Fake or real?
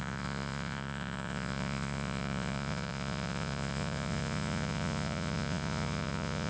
fake